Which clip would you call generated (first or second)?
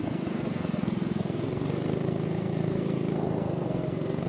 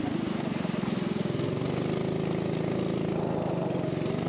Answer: first